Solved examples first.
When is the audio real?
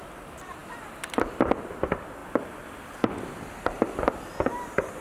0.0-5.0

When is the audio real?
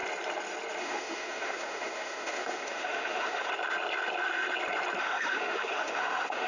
0.0-0.8; 3.5-5.0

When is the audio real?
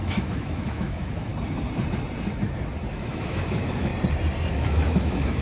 1.3-2.9; 3.9-4.5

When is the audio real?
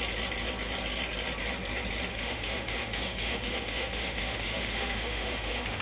0.0-2.1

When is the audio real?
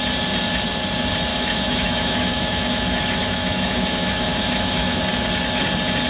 0.0-1.3; 5.0-6.1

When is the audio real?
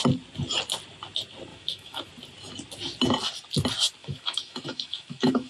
0.0-1.5; 2.1-4.0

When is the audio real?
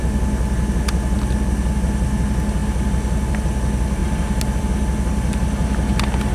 0.0-6.3